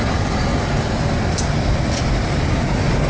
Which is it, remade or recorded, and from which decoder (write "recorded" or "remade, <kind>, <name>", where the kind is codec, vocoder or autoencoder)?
recorded